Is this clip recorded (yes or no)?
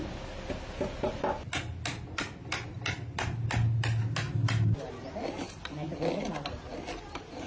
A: yes